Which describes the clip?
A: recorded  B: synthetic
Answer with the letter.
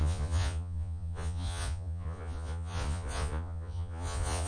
B